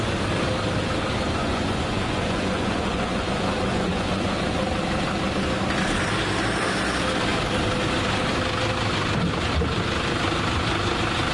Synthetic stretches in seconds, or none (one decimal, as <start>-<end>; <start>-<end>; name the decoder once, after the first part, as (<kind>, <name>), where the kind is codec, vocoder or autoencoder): 1.4-4.4 (vocoder, Vocos)